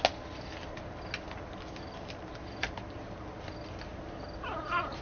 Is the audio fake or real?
real